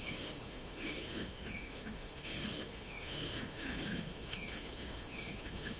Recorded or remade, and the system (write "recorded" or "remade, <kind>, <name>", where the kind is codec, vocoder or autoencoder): remade, autoencoder, DAC-VAE